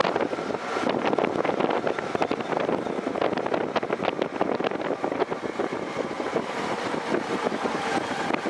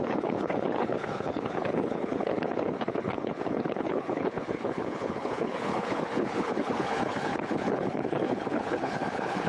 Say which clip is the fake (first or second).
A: second